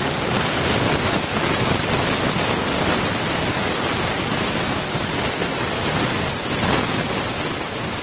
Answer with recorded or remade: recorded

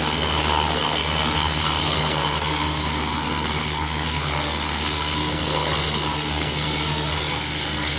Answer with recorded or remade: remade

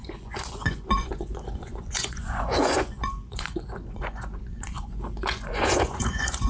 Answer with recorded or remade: remade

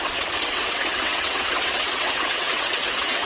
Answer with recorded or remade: remade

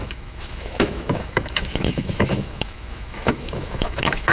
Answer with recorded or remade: remade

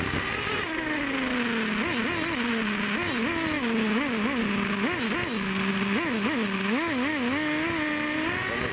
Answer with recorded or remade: recorded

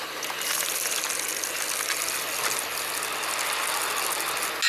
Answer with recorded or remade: recorded